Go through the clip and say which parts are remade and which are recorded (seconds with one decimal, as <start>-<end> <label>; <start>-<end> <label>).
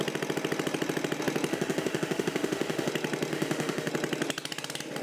0.0-1.5 recorded; 1.5-2.9 remade; 2.9-3.3 recorded; 3.3-3.9 remade; 3.9-5.0 recorded